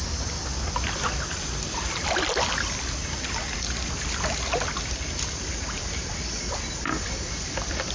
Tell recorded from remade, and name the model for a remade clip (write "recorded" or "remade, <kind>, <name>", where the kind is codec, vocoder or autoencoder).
recorded